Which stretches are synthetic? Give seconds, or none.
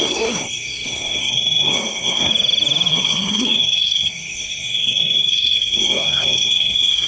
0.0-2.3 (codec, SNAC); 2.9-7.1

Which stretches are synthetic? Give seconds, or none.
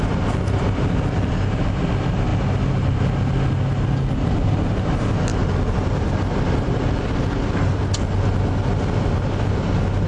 5.3-7.8 (vocoder, BigVGAN v2)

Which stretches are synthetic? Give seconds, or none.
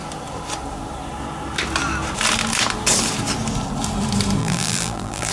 4.4-5.3 (vocoder, BigVGAN v2)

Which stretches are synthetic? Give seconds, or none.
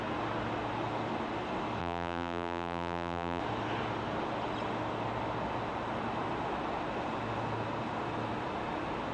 1.8-3.4 (vocoder, BigVGAN v2)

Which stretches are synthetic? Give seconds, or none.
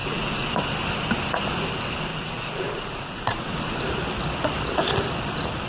0.0-0.5 (vocoder, Vocos); 2.1-3.8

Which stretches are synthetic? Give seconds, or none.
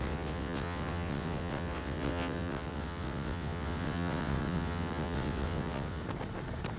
0.0-6.0 (vocoder, WaveNeXt)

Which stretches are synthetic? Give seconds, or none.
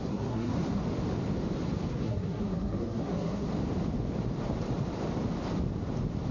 0.0-0.8 (codec, SNAC); 1.9-3.5